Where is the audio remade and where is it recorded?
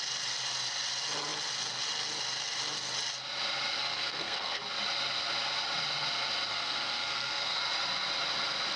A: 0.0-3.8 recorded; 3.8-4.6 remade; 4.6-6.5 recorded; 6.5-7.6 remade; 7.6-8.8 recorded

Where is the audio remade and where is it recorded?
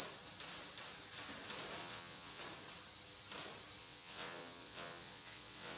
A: 0.0-1.8 recorded; 1.8-2.4 remade; 2.4-3.8 recorded; 3.8-5.8 remade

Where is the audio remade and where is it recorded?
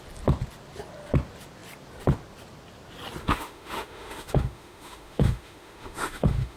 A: 0.0-3.2 recorded; 3.2-6.6 remade